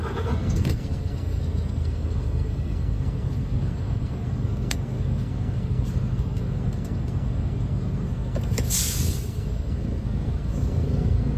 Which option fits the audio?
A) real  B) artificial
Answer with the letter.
B